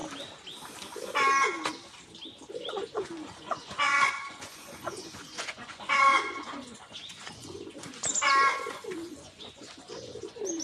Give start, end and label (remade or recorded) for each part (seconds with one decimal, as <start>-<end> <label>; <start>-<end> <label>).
0.0-2.5 recorded; 2.5-8.1 remade; 8.1-8.7 recorded; 8.7-10.6 remade